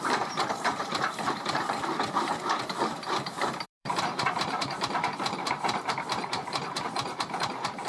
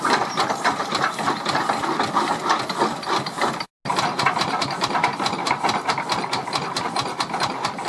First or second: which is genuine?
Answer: second